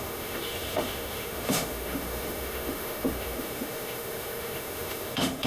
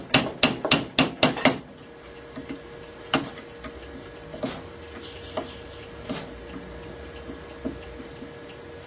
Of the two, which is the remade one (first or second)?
first